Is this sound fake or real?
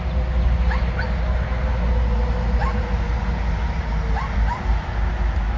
real